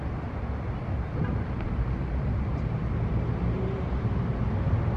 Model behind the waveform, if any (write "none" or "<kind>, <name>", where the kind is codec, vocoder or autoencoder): none